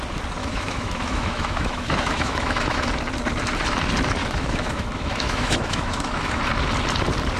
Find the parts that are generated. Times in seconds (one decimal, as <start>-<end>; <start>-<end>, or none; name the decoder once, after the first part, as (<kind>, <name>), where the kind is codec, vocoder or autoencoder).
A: 0.4-2.9 (autoencoder, DAC-VAE); 4.2-6.4